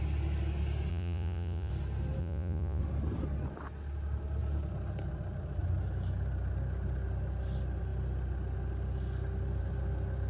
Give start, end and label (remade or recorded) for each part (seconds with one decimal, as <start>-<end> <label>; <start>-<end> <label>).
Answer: 0.0-0.9 recorded; 0.9-1.7 remade; 1.7-2.2 recorded; 2.2-2.8 remade; 2.8-10.3 recorded